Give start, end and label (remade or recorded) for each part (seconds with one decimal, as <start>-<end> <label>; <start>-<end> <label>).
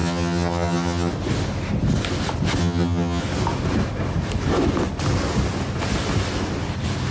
0.0-1.1 remade; 1.1-2.6 recorded; 2.6-3.2 remade; 3.2-7.1 recorded